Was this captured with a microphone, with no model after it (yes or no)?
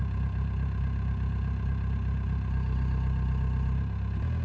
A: yes